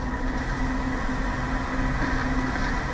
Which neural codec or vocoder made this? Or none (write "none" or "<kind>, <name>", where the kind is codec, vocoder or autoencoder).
none